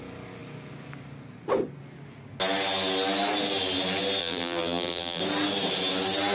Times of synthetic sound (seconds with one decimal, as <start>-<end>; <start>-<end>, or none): 4.2-5.2